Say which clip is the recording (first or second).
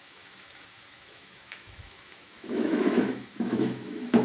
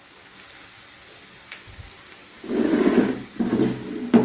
second